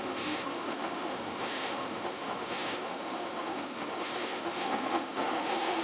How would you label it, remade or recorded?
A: remade